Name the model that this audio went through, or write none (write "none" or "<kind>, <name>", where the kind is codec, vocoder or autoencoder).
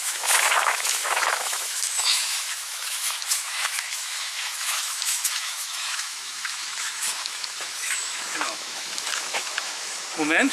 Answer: autoencoder, DAC-VAE